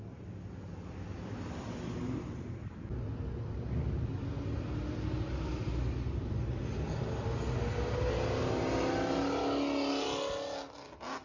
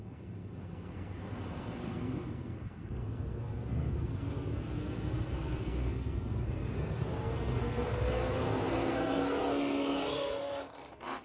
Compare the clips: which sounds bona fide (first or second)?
first